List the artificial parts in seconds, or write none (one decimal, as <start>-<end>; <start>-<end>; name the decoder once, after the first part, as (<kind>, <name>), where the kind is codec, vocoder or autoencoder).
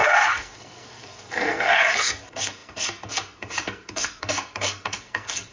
0.0-5.5 (codec, SNAC)